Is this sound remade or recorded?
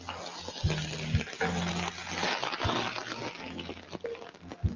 recorded